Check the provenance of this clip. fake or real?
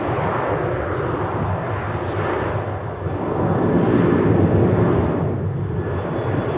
real